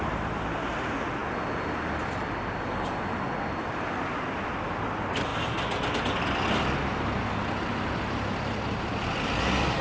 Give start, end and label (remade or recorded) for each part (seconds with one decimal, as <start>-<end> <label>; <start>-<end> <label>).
0.0-9.8 recorded